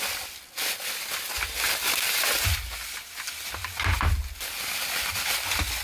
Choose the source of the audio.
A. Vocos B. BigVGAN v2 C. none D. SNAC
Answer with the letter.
C